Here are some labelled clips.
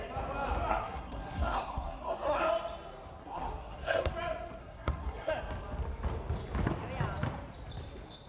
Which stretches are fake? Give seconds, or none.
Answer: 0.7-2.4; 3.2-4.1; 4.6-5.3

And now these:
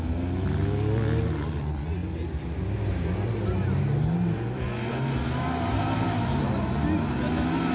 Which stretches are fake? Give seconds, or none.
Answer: none